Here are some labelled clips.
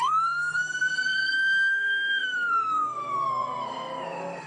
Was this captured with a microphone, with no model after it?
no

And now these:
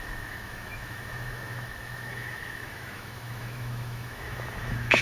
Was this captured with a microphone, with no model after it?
no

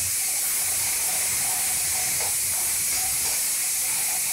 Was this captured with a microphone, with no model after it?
yes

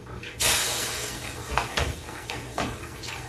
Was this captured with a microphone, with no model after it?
no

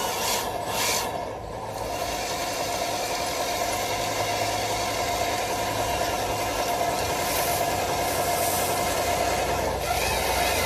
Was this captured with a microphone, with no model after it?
yes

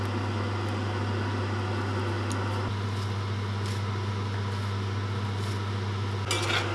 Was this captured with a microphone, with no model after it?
yes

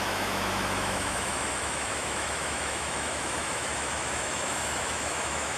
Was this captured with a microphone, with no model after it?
no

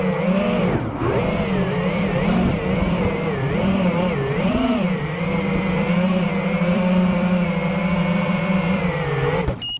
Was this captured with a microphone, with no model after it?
no